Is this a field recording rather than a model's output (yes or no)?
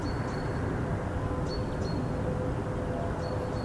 yes